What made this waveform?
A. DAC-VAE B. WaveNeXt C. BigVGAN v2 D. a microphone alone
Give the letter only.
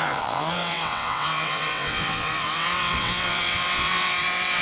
B